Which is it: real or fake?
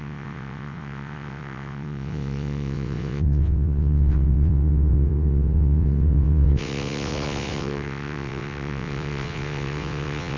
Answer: fake